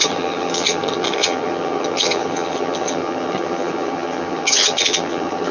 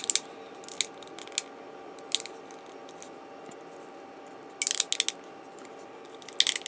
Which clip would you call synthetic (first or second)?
first